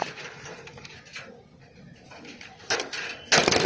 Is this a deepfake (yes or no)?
no